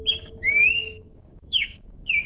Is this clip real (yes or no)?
no